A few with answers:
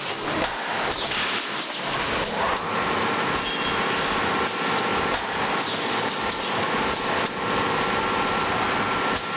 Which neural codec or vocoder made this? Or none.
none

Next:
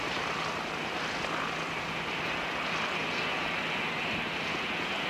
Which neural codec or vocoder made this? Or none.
none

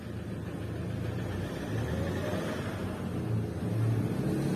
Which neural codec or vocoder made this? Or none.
none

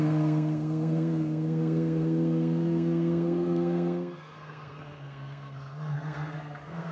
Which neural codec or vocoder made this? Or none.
codec, SNAC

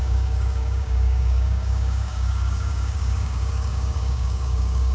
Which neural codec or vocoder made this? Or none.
codec, DAC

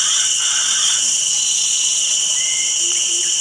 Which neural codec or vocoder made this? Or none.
vocoder, WaveNeXt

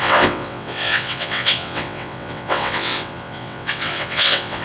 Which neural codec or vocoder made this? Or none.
vocoder, WaveNeXt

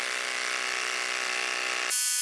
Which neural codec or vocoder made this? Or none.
none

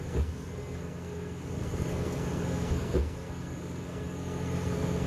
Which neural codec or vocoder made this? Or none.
codec, SNAC